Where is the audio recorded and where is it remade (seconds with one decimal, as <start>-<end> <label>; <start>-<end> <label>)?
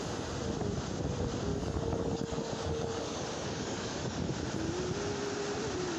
0.0-1.5 recorded; 1.5-4.3 remade; 4.3-6.0 recorded